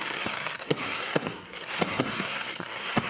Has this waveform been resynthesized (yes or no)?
yes